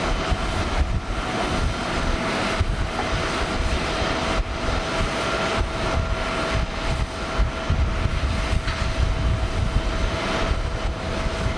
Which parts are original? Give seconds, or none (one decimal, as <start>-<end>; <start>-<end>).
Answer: 0.0-11.6